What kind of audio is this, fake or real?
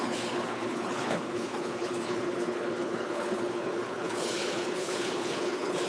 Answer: fake